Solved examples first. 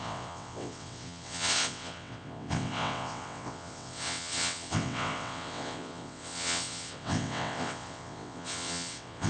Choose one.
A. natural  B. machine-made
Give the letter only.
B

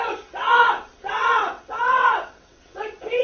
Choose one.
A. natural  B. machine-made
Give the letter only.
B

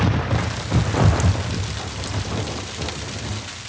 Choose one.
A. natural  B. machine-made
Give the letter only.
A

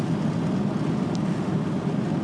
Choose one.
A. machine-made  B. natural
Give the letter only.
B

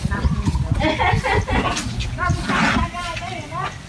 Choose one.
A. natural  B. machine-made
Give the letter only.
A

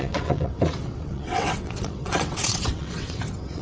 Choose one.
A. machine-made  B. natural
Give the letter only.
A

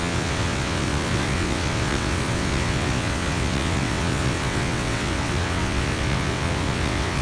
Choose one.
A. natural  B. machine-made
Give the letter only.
B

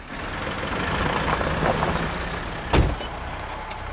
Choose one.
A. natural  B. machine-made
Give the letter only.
A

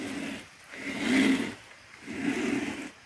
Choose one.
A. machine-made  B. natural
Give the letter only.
B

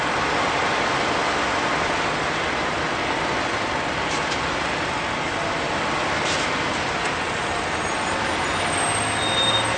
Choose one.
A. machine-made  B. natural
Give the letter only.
B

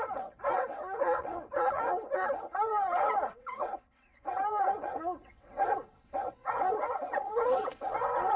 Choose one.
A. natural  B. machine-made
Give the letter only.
B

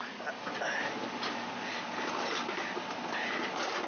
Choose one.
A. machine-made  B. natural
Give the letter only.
B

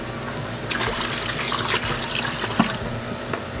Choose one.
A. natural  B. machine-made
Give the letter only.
A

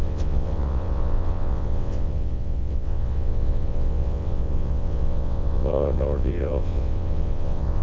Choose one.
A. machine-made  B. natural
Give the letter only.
A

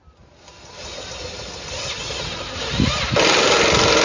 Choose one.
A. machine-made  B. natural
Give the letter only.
B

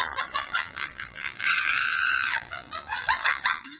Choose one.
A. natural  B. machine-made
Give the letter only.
B